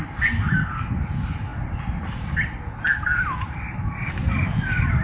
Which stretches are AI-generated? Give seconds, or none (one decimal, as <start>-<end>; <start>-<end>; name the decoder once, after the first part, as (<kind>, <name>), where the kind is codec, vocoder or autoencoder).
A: none